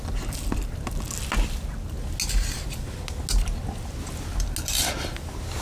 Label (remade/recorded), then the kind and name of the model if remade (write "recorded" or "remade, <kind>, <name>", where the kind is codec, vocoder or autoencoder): recorded